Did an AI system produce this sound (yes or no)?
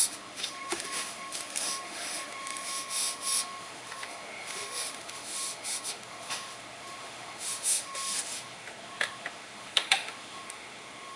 yes